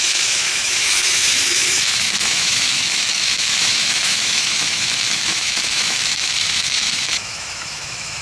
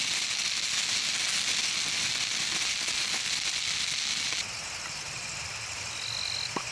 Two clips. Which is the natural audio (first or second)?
second